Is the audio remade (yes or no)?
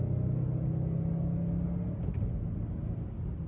no